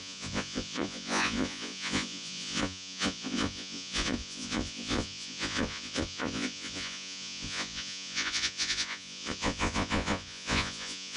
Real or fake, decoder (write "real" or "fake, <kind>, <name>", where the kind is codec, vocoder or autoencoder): fake, vocoder, Vocos